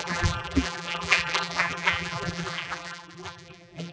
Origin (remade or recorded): remade